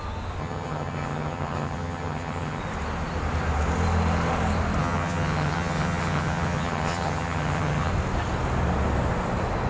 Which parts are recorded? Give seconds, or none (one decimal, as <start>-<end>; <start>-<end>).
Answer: 0.0-0.4; 2.6-4.8; 7.9-9.7